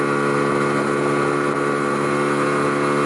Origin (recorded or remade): recorded